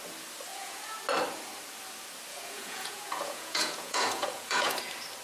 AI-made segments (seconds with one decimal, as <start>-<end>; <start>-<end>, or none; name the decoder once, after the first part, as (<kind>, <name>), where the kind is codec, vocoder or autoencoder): 0.5-1.0 (vocoder, Vocos); 2.3-4.8